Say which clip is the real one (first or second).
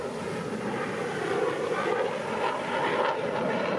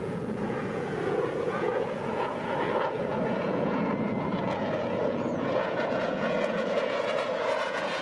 first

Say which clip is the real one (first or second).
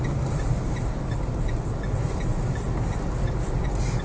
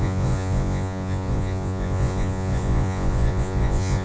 first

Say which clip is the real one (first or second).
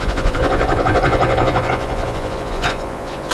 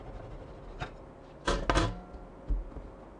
second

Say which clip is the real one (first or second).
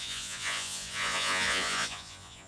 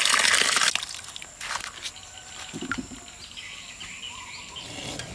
second